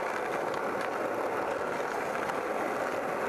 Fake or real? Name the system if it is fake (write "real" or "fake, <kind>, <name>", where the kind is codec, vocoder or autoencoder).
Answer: real